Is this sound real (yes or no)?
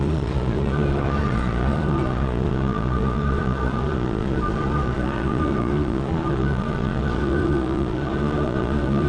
no